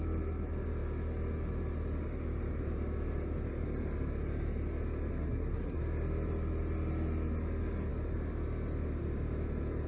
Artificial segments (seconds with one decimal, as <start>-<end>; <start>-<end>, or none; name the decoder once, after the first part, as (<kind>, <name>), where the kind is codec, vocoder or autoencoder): 5.1-5.8 (codec, SNAC)